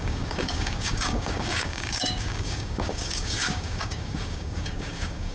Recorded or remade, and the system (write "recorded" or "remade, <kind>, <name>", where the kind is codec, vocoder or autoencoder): remade, codec, DAC